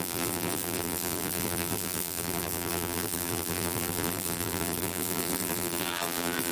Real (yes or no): no